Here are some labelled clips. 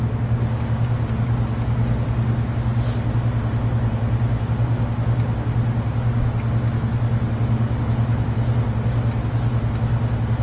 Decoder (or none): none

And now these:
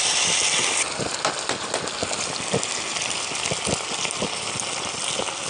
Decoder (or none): none